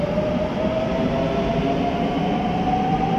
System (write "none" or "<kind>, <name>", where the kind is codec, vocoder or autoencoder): none